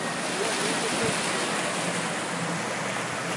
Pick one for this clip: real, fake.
real